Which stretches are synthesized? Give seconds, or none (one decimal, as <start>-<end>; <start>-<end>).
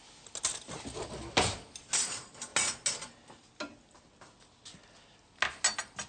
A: none